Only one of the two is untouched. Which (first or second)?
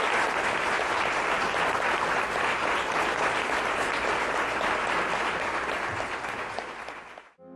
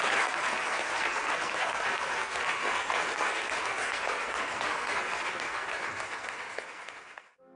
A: first